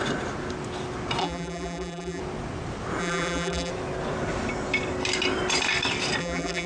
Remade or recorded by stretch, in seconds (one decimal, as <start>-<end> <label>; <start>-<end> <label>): 0.0-1.2 recorded; 1.2-2.2 remade; 2.2-3.0 recorded; 3.0-3.7 remade; 3.7-6.2 recorded; 6.2-6.7 remade